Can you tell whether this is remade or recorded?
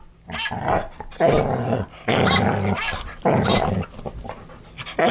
recorded